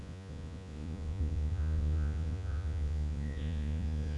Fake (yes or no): yes